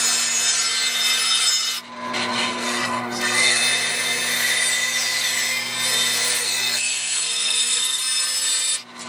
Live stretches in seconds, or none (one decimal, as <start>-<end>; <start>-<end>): 0.0-2.3; 3.6-6.4; 8.0-9.1